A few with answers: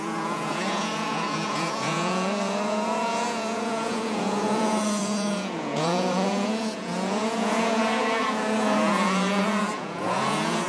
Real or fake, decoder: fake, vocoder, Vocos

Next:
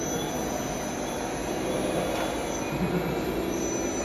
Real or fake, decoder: real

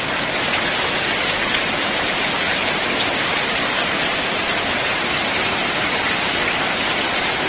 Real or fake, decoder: real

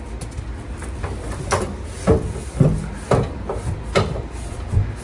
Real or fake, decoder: real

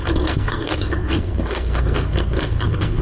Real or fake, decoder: fake, codec, SNAC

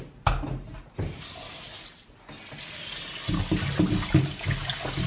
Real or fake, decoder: real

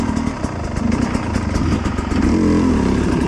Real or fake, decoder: real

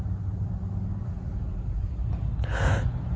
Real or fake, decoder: real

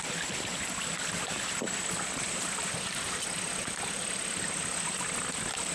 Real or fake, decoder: real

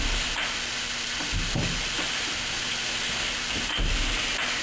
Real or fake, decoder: real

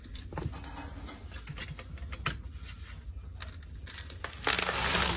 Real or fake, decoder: real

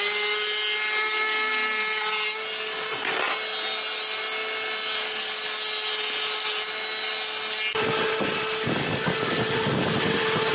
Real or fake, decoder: real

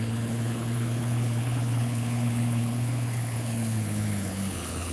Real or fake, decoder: fake, codec, HILCodec